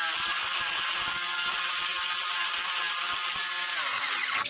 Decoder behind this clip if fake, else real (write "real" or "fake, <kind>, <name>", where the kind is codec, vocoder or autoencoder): real